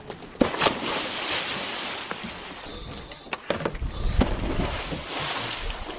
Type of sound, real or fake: real